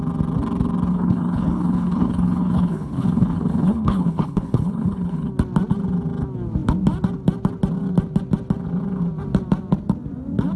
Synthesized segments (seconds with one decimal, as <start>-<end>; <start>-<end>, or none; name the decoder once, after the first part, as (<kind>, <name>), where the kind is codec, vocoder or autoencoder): 0.9-5.3 (codec, HILCodec)

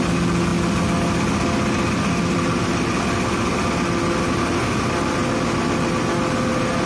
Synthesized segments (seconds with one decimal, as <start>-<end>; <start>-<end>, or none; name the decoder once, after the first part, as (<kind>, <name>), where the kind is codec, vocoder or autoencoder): none